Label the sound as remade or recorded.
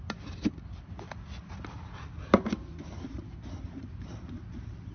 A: recorded